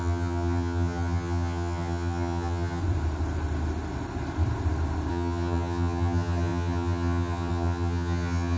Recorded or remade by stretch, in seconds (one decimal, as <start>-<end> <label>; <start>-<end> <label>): 0.0-2.8 remade; 2.8-5.1 recorded; 5.1-8.6 remade

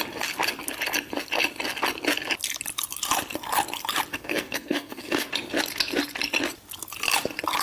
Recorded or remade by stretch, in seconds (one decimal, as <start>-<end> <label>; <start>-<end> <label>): 0.0-4.1 recorded; 4.1-5.3 remade; 5.3-7.6 recorded

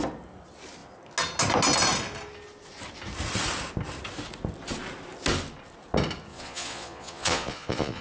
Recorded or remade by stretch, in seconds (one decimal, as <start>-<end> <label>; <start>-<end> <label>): 0.0-6.3 recorded; 6.3-8.0 remade

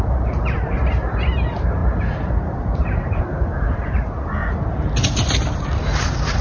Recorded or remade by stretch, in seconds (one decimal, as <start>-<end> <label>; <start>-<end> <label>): 0.0-4.4 remade; 4.4-5.2 recorded; 5.2-6.4 remade

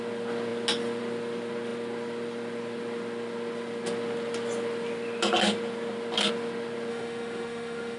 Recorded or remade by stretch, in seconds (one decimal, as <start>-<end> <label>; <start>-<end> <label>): 0.0-6.9 recorded; 6.9-8.0 remade